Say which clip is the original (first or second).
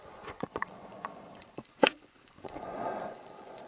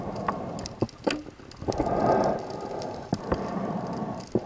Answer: second